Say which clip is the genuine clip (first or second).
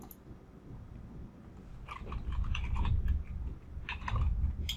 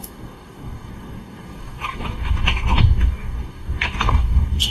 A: first